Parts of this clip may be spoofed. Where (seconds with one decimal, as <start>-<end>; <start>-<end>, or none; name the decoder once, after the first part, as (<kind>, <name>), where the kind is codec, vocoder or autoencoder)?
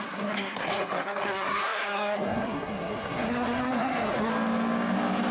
0.0-4.3 (codec, SNAC)